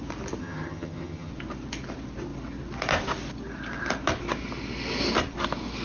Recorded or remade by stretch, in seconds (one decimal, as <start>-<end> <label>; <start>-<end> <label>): 0.0-0.4 recorded; 0.4-1.3 remade; 1.3-5.8 recorded